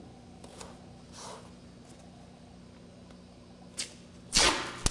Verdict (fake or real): real